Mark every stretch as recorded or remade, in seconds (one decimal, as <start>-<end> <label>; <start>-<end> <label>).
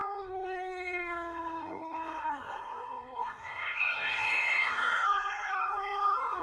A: 0.0-6.4 remade